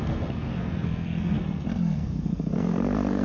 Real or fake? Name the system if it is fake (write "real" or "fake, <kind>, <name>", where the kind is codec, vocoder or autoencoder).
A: fake, codec, SNAC